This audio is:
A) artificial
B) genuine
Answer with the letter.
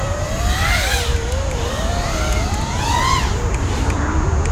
A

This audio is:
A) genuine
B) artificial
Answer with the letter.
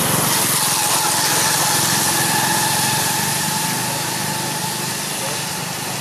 A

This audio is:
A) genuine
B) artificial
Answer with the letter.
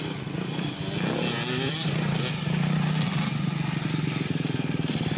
A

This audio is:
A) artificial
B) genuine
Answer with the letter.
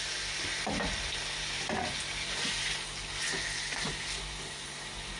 B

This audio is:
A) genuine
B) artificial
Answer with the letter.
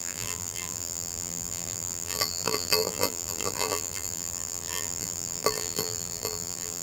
B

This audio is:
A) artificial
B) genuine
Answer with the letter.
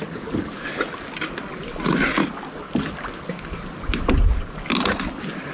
B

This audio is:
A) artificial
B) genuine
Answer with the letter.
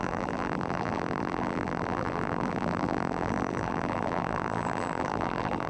A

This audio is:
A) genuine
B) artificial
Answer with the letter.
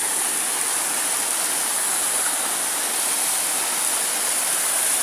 A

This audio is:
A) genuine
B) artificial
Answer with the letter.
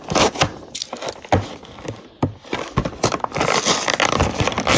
A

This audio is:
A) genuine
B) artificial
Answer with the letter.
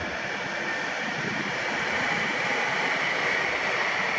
A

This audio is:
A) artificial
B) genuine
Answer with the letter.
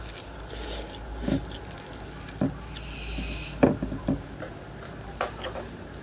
B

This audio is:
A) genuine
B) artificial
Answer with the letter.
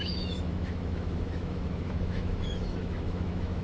B